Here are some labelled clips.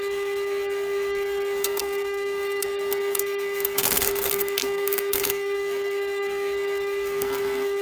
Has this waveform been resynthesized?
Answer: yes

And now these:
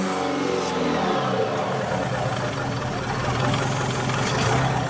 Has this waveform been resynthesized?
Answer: no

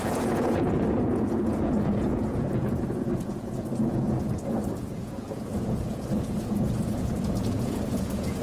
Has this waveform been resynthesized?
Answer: yes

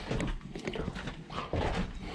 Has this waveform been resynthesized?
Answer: no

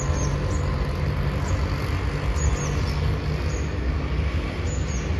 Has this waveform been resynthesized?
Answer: no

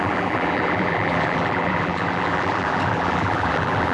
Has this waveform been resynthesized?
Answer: yes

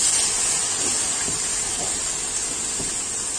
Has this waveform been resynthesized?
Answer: no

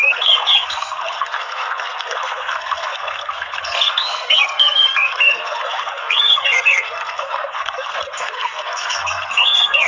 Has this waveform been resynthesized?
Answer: yes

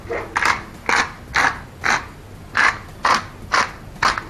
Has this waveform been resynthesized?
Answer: no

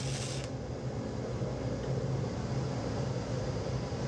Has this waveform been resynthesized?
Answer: no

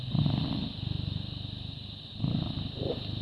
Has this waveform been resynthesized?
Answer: yes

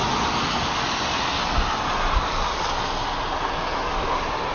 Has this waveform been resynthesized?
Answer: no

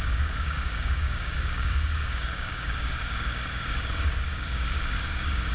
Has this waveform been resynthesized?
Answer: yes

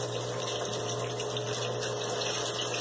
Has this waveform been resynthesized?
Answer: no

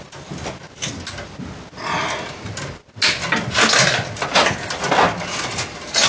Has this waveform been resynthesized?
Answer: no